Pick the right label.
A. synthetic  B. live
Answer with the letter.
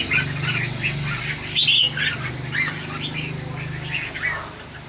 B